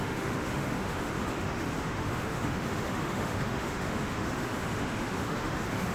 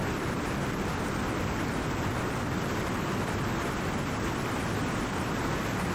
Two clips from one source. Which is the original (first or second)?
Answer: second